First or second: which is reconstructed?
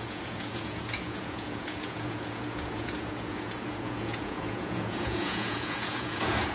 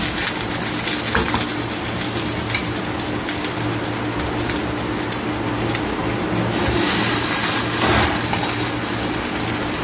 first